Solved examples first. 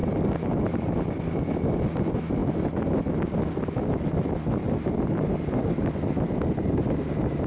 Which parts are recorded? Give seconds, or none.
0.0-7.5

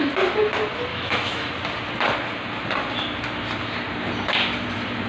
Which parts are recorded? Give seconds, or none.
0.0-0.9; 1.5-5.1

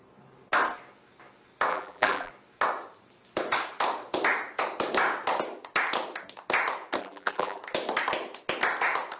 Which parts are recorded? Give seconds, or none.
0.0-1.7; 2.3-7.0; 7.6-9.2

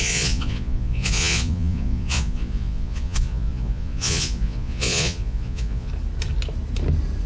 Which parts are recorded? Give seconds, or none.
5.9-7.3

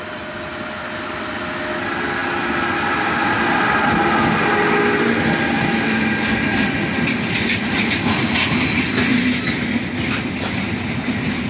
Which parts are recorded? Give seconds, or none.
0.0-11.5

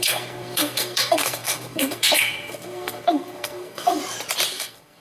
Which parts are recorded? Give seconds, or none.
4.0-4.5

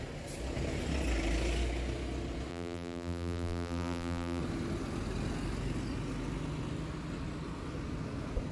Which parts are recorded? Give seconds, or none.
0.0-2.5; 4.4-8.5

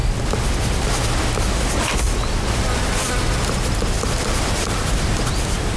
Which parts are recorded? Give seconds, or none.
0.0-5.8